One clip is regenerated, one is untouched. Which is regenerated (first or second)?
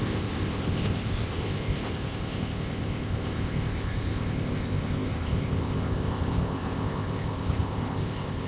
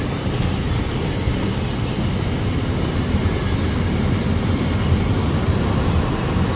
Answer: first